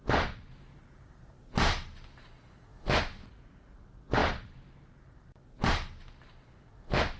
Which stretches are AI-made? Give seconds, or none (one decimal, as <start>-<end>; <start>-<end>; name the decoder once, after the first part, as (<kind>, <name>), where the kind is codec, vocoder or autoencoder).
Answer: none